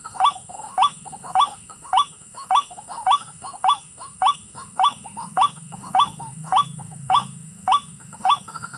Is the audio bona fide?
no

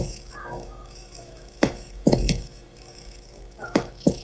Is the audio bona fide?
no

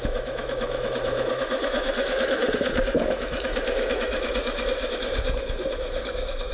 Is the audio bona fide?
no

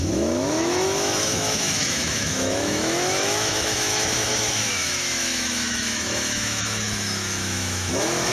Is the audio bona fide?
no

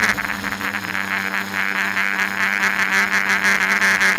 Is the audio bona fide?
yes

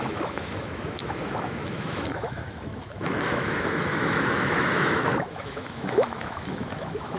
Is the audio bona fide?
no